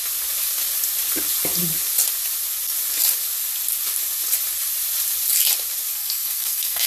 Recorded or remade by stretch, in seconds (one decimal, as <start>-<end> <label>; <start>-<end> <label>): 0.0-5.9 recorded; 5.9-6.9 remade